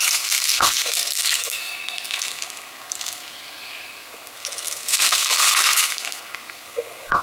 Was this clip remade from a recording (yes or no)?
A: yes